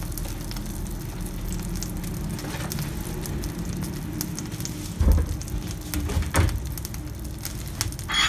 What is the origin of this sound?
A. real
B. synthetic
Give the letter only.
A